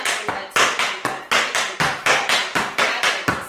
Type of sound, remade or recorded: recorded